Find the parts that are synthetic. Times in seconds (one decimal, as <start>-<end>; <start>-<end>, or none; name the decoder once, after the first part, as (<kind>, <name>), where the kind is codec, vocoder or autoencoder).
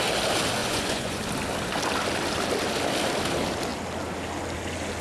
0.6-1.2 (vocoder, Vocos)